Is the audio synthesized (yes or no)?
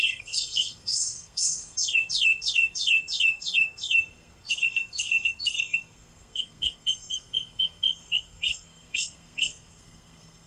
yes